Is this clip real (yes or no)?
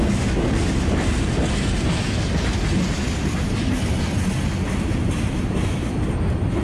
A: yes